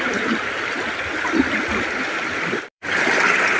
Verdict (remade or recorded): remade